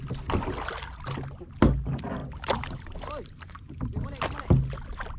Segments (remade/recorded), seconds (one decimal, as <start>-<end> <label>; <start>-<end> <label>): 0.0-2.2 recorded; 2.2-3.8 remade; 3.8-5.2 recorded